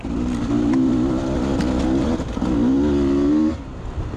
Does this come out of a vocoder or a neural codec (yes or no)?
no